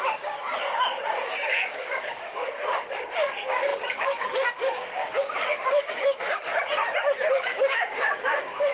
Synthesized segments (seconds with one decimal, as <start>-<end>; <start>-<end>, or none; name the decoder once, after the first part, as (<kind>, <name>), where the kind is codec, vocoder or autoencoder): 0.0-6.5 (codec, DAC); 7.3-8.7